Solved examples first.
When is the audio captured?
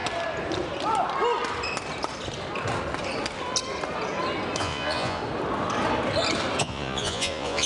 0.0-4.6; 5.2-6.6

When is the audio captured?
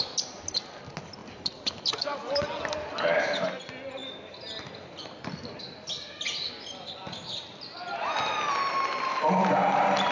0.0-10.1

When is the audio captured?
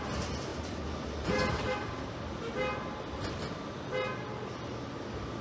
0.0-5.4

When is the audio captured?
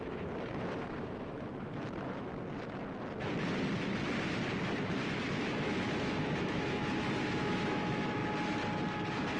2.3-5.3; 8.2-9.4